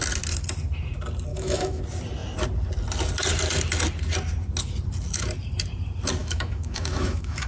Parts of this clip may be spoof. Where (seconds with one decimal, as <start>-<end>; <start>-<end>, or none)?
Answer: 1.3-1.8; 6.2-7.5